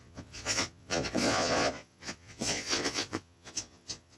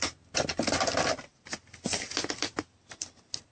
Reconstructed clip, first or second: first